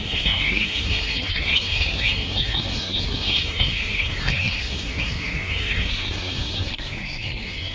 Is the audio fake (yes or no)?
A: yes